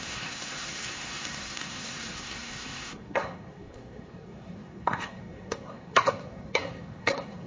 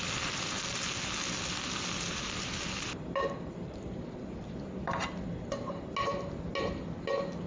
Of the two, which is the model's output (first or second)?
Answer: first